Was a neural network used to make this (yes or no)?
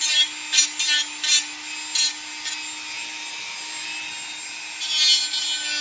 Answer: no